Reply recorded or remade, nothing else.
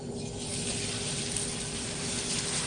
recorded